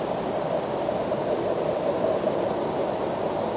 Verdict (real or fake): real